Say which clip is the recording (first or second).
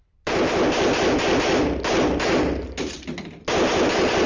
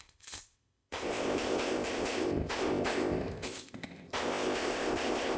first